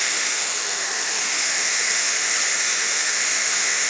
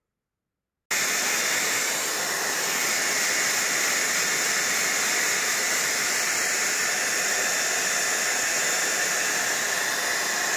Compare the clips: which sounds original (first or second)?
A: second